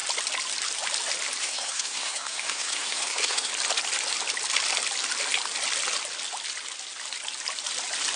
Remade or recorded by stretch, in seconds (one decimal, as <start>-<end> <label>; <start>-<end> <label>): 0.0-1.4 recorded; 1.4-3.5 remade; 3.5-8.2 recorded